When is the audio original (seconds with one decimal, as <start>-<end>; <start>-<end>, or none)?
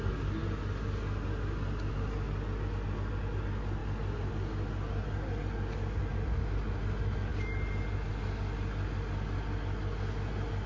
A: 0.0-7.3; 8.1-10.7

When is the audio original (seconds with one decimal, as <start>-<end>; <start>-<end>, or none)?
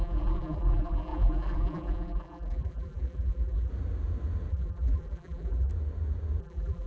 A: 3.7-4.5; 5.7-6.4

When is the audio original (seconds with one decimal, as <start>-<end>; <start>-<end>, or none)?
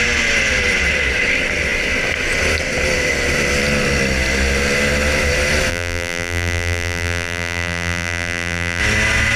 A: 0.0-5.7; 8.8-9.4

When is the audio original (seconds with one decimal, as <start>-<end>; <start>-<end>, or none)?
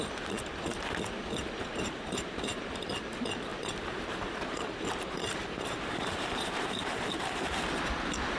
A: 0.0-1.6; 2.9-3.5; 7.6-8.4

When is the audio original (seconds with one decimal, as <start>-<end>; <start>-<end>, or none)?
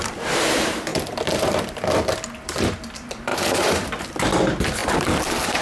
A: none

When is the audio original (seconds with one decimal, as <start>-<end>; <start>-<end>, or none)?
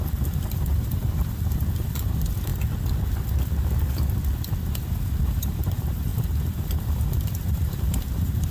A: 2.5-5.0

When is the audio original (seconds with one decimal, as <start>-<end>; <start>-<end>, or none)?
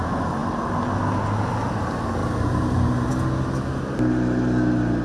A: 0.0-2.2; 3.1-5.0